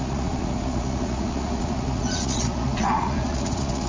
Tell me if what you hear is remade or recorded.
remade